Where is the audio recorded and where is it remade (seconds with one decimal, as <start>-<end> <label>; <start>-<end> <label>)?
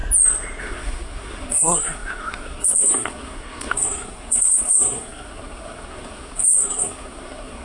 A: 0.0-0.6 recorded; 0.6-7.6 remade